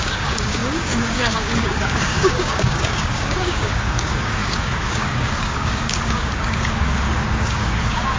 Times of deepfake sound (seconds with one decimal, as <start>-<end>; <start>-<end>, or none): 0.0-8.2